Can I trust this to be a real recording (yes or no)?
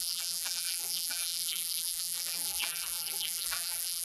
no